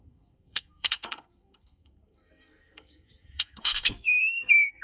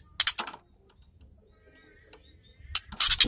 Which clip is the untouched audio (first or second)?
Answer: second